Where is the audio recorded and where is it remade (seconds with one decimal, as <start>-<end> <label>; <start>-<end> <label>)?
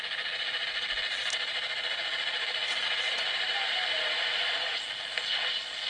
0.0-5.9 recorded